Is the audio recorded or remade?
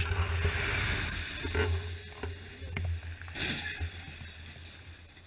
recorded